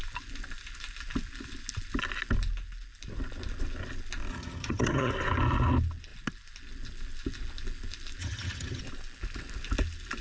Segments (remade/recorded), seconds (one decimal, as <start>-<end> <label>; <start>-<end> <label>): 0.0-4.3 recorded; 4.3-5.1 remade; 5.1-8.2 recorded; 8.2-8.8 remade; 8.8-10.2 recorded